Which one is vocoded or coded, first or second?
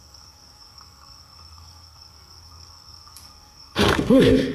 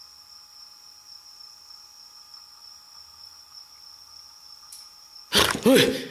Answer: first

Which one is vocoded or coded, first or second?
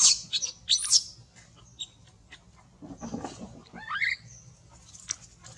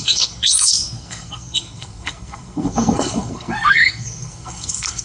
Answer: second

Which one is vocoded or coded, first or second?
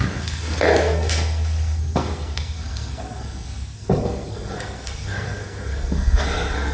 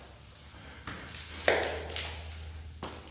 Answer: first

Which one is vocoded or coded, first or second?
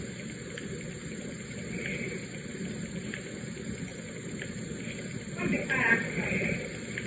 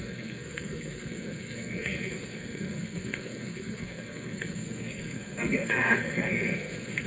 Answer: second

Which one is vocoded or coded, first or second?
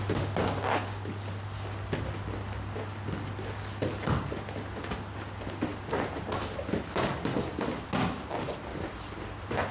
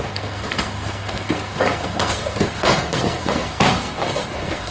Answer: second